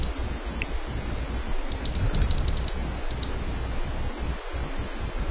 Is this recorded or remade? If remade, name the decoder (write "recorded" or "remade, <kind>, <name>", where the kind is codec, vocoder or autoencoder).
recorded